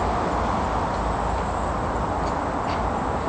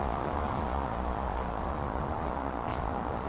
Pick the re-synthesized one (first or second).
second